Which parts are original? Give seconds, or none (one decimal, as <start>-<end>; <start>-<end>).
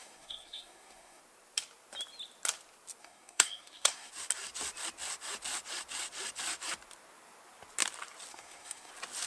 1.2-3.0; 4.1-8.3; 8.9-9.3